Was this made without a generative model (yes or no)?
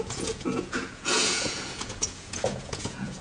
no